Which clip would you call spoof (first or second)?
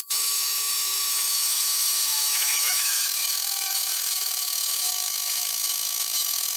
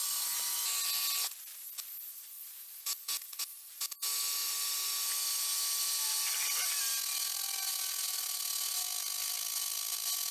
first